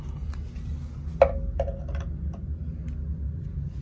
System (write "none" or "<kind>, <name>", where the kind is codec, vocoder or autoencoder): none